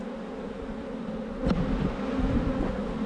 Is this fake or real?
real